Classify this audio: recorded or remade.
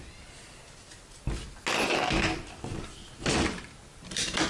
recorded